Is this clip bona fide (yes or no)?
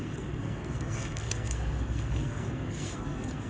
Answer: no